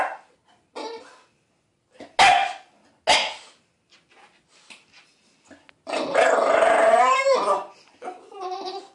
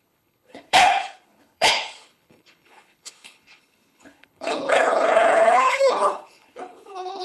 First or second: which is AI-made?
second